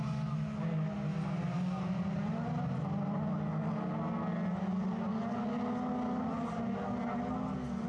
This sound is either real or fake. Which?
real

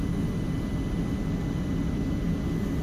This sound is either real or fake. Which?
real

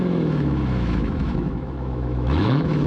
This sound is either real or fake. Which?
fake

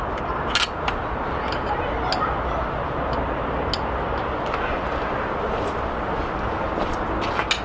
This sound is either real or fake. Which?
real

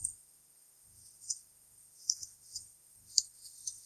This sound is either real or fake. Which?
fake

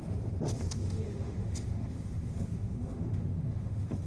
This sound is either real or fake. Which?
fake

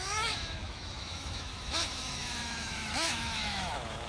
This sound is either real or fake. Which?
fake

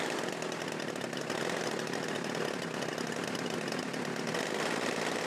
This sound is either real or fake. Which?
real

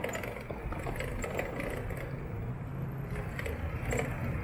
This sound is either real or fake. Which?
real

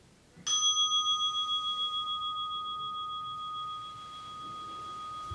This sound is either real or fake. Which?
real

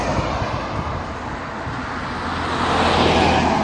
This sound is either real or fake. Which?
real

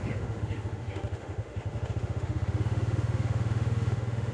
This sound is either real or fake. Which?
fake